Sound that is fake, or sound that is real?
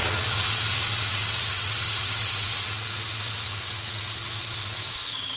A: fake